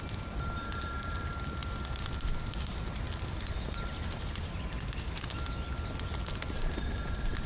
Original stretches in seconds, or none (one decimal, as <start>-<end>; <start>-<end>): 0.0-7.5